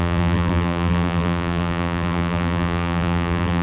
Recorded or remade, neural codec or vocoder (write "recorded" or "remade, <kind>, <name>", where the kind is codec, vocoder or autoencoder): remade, vocoder, BigVGAN v2